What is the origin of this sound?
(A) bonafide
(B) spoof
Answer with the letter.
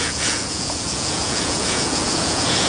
B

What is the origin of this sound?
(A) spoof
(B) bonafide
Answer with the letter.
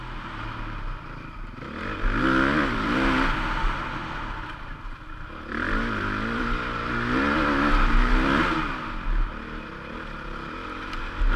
B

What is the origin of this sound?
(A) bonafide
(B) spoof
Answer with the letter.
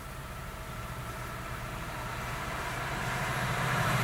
B